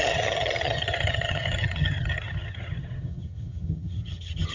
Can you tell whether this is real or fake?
fake